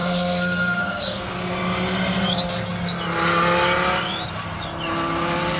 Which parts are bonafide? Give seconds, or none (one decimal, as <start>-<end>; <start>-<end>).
1.3-5.6